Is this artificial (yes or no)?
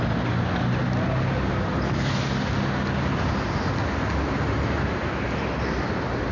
no